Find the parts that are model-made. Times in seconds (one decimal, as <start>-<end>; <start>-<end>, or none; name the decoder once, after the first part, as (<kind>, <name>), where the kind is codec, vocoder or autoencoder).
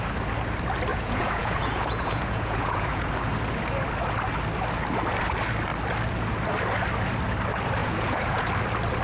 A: 0.9-3.1 (vocoder, Vocos); 7.8-8.5